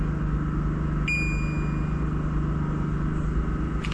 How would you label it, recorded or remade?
recorded